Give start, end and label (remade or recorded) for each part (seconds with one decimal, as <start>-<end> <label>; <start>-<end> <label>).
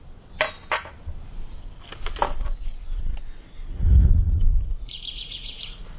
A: 0.0-3.7 recorded; 3.7-6.0 remade